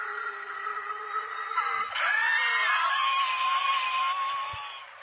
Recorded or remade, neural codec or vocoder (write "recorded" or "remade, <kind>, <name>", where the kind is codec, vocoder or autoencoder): recorded